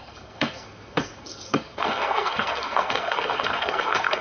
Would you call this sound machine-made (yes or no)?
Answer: yes